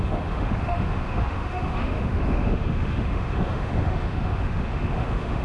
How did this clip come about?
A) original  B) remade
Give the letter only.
B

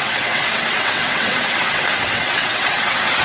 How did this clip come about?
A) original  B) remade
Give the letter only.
B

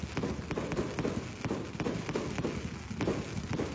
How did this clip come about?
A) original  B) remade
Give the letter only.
A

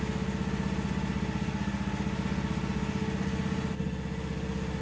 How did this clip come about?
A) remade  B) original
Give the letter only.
B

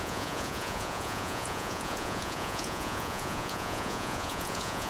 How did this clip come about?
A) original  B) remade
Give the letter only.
B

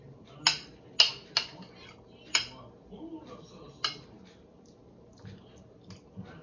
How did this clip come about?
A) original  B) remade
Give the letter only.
A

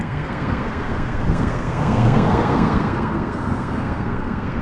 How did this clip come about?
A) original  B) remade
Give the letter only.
B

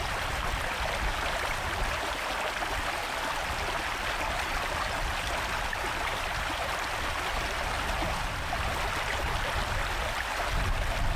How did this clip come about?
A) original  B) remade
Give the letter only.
A